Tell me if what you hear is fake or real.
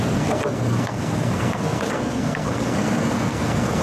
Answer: fake